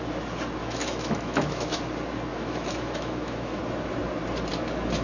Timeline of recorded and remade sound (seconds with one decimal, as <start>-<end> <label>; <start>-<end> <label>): 0.0-0.6 recorded; 0.6-1.8 remade; 1.8-2.3 recorded; 2.3-3.6 remade; 3.6-5.0 recorded